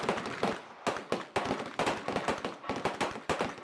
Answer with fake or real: real